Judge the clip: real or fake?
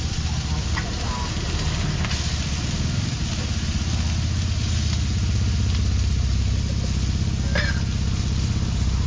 real